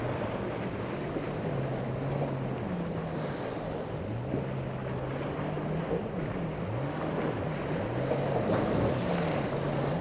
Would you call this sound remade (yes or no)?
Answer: no